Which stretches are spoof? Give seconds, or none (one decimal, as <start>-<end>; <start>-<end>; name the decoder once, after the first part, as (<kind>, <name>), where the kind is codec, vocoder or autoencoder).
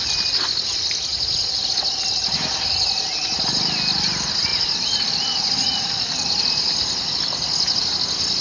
none